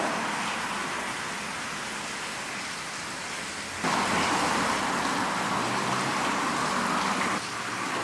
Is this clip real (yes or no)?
yes